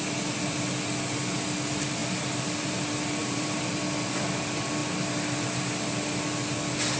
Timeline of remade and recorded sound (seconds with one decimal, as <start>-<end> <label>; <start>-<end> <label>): 0.0-2.0 recorded; 2.0-2.8 remade; 2.8-3.2 recorded; 3.2-3.7 remade; 3.7-7.0 recorded